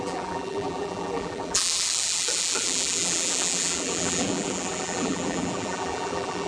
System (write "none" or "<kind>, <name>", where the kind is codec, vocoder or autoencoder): vocoder, BigVGAN v2